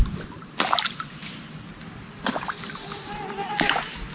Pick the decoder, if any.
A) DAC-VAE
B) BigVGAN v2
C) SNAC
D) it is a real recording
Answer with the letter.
D